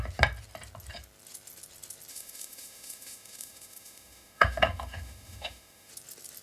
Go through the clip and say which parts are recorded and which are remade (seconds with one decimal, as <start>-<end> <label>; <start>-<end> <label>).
0.0-2.1 recorded; 2.1-5.9 remade; 5.9-6.4 recorded